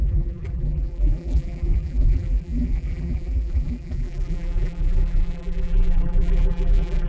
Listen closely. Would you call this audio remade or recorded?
remade